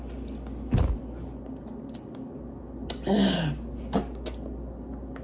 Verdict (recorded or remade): recorded